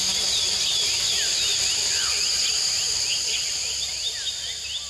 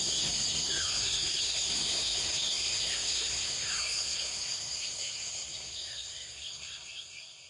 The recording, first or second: first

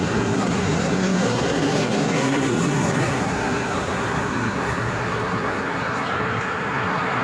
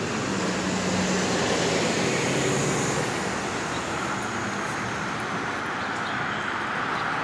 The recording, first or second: second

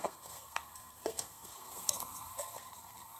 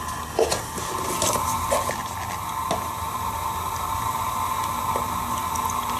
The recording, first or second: second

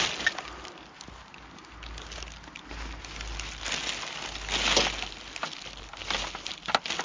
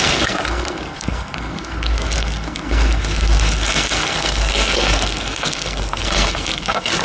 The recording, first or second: first